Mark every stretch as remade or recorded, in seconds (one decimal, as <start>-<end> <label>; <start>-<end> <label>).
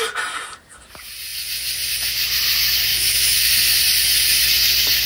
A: 0.0-2.9 recorded; 2.9-3.5 remade; 3.5-5.1 recorded